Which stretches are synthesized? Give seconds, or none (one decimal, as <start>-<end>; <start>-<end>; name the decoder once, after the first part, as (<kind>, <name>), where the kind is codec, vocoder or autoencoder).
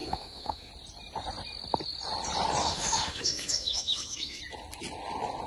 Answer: 0.0-0.7 (autoencoder, DAC-VAE); 2.6-4.4